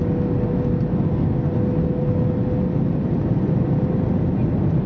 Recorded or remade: recorded